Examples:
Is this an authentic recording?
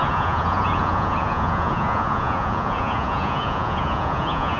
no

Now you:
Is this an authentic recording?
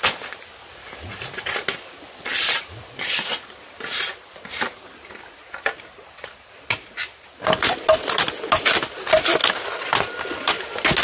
yes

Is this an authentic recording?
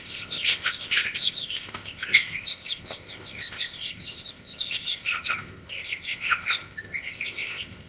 no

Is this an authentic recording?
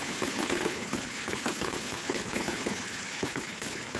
no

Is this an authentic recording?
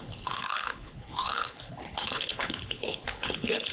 no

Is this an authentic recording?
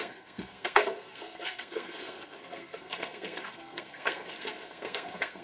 no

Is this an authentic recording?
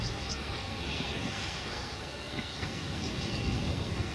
no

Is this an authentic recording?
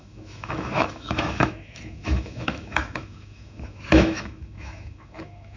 no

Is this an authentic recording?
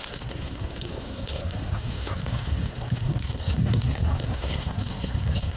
no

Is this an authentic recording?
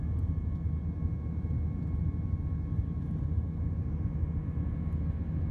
yes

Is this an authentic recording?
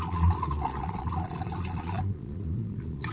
no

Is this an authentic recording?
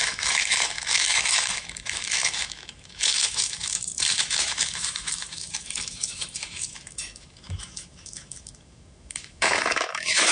no